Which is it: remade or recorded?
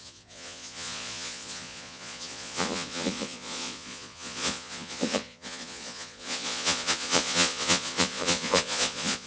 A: remade